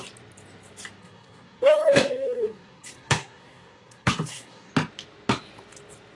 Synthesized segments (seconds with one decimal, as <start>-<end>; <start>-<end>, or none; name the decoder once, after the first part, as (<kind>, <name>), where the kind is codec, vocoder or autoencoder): 1.0-4.7 (codec, SNAC)